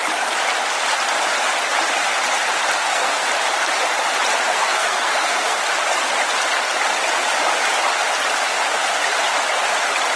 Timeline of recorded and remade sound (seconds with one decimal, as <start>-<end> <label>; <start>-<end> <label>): 0.0-2.8 recorded; 2.8-3.3 remade; 3.3-4.5 recorded; 4.5-5.6 remade; 5.6-10.2 recorded

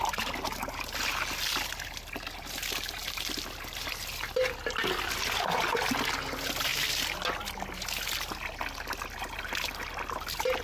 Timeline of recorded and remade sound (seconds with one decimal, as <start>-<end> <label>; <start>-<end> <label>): 0.0-10.6 recorded

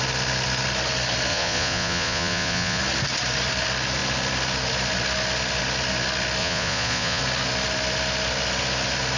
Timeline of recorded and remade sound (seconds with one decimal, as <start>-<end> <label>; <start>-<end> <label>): 0.0-1.3 recorded; 1.3-2.8 remade; 2.8-6.4 recorded; 6.4-7.2 remade; 7.2-9.2 recorded

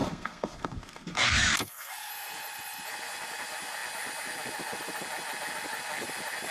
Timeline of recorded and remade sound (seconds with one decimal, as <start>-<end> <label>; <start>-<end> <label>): 0.0-2.1 remade; 2.1-6.5 recorded

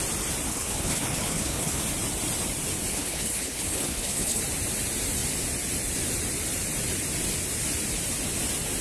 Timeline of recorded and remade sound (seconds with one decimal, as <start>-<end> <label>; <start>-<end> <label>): 0.0-0.5 recorded; 0.5-1.8 remade; 1.8-2.9 recorded; 2.9-4.4 remade; 4.4-8.8 recorded